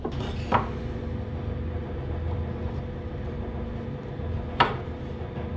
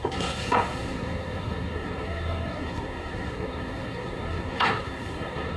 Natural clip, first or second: first